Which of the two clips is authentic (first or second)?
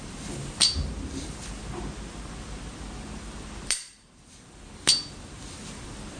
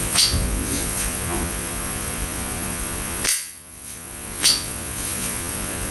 first